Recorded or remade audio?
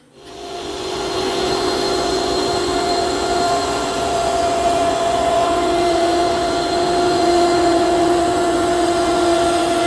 remade